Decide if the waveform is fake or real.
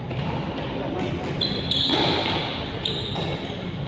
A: real